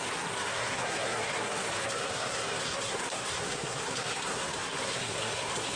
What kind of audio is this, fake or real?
fake